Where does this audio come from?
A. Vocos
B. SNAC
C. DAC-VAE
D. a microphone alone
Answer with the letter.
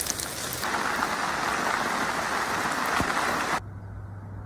D